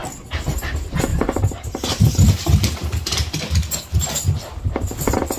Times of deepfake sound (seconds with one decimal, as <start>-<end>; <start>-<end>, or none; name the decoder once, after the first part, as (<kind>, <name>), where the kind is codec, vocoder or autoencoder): 1.1-3.4 (vocoder, BigVGAN v2)